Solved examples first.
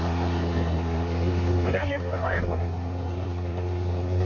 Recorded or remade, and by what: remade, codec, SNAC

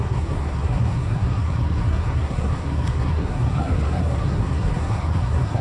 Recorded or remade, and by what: remade, codec, SNAC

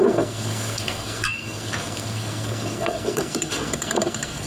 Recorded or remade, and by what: remade, codec, SNAC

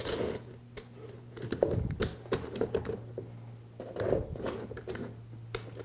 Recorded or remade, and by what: recorded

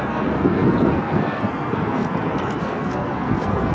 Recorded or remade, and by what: remade, codec, SNAC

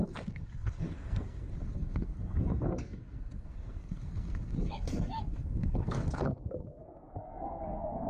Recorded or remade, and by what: remade, codec, SNAC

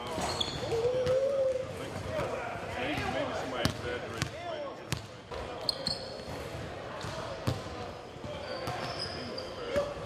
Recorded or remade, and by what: recorded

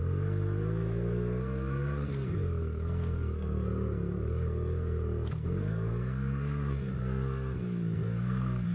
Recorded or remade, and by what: remade, codec, SNAC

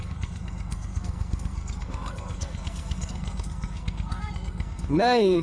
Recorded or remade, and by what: remade, codec, SNAC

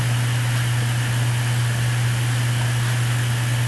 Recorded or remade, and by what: recorded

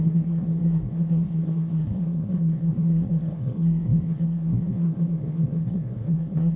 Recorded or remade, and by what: remade, codec, SNAC